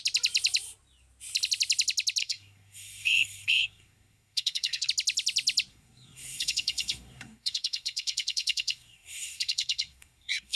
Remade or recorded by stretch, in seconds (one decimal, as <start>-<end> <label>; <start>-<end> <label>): 0.0-2.2 recorded; 2.2-4.9 remade; 4.9-5.7 recorded; 5.7-10.6 remade